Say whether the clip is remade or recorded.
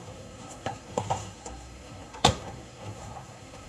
remade